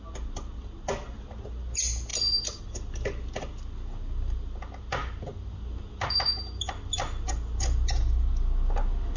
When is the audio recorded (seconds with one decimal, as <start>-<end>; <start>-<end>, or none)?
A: 0.0-9.2